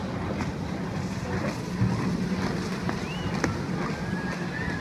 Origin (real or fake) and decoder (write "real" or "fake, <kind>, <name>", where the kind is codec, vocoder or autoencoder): real